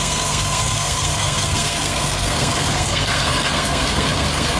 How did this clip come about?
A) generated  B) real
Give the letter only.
A